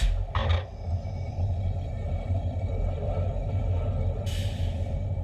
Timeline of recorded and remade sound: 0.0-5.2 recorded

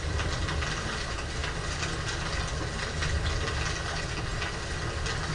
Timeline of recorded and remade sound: 0.0-5.3 recorded

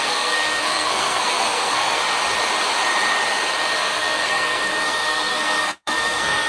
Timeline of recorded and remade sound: 0.0-2.0 remade; 2.0-3.8 recorded; 3.8-6.5 remade

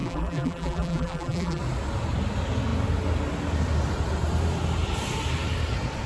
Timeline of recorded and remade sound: 0.0-1.6 remade; 1.6-6.1 recorded